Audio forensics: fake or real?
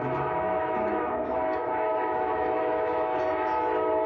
fake